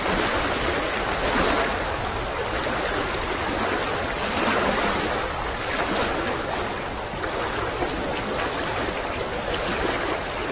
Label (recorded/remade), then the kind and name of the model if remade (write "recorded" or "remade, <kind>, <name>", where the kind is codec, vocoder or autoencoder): recorded